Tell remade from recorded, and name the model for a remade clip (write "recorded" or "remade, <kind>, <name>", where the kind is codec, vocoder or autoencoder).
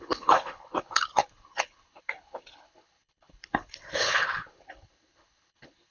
remade, codec, HILCodec